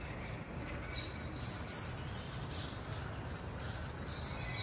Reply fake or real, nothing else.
real